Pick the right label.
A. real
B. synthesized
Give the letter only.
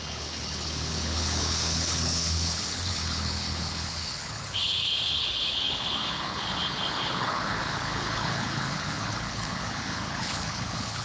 B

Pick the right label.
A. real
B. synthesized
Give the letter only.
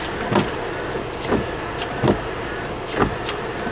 A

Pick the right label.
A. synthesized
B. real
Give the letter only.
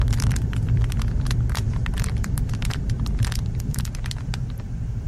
A